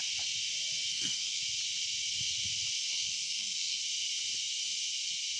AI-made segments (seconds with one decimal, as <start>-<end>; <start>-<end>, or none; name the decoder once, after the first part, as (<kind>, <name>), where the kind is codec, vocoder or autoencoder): 0.9-1.4 (codec, SNAC); 2.9-3.8